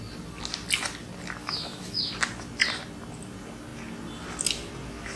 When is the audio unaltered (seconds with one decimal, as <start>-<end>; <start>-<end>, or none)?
0.0-1.4; 2.0-5.2